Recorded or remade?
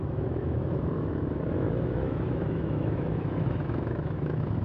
remade